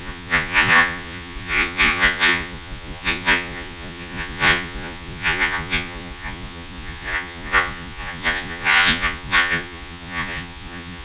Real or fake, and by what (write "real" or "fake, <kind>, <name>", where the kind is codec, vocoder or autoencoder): fake, vocoder, Vocos